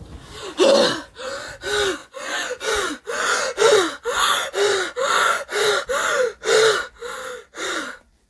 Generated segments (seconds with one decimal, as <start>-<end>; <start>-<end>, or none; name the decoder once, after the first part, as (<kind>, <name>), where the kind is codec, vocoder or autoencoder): 2.0-5.7 (vocoder, Vocos)